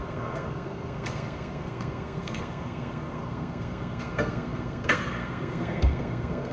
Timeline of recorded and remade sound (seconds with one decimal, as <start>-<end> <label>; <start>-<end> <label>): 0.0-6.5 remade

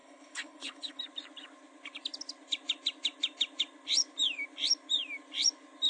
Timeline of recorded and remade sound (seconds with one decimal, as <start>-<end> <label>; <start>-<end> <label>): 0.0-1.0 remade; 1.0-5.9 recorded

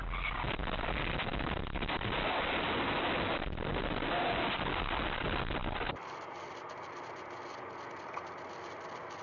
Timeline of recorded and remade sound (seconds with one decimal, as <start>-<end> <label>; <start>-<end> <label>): 0.0-9.2 recorded

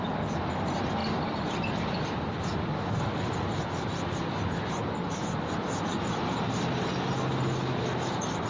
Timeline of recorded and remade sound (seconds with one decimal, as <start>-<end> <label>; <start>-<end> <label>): 0.0-1.0 recorded; 1.0-4.1 remade; 4.1-8.5 recorded